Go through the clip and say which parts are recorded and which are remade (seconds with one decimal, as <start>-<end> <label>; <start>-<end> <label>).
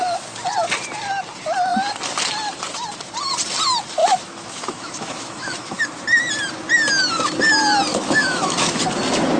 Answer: 0.0-4.0 recorded; 4.0-5.8 remade; 5.8-7.9 recorded; 7.9-8.8 remade; 8.8-9.4 recorded